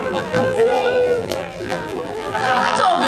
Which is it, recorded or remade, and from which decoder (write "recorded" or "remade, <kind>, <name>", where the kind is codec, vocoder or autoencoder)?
remade, vocoder, BigVGAN v2